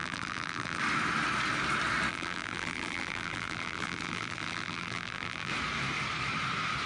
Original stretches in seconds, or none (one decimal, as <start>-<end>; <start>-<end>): 0.8-2.1; 5.5-6.9